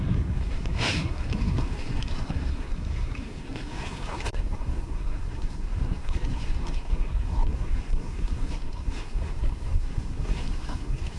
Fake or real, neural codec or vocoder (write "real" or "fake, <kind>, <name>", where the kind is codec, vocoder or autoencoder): fake, codec, SNAC